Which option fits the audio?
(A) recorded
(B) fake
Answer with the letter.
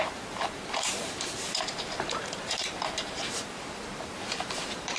B